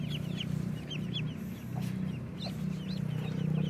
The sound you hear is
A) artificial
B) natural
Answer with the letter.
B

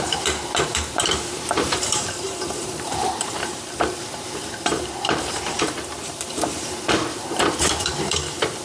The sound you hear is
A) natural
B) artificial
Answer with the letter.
B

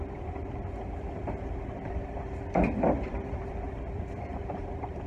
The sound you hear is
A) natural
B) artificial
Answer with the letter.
B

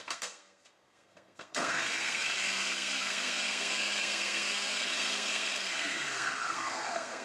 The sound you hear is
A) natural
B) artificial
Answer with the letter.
B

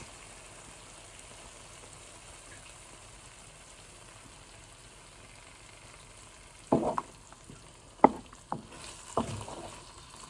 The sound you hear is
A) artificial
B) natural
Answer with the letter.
B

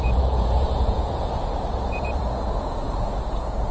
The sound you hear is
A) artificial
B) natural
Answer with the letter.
A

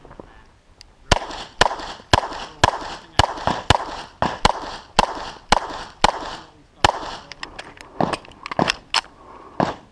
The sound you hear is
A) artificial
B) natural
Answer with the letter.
B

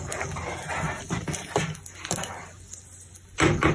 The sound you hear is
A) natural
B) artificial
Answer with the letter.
A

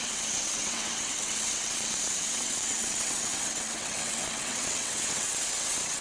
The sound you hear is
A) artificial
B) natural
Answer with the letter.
A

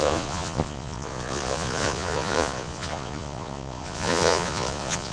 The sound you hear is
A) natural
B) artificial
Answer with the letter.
B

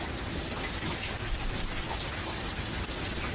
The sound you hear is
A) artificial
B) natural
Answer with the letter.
B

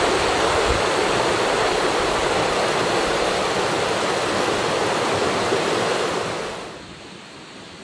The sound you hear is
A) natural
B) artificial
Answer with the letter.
A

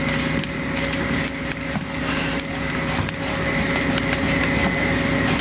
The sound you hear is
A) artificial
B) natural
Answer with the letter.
B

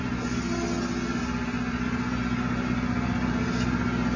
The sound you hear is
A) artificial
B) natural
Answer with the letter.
B